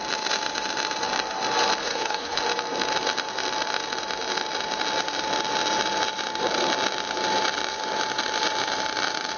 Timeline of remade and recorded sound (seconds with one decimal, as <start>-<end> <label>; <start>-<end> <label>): 0.0-1.8 recorded; 1.8-2.4 remade; 2.4-9.4 recorded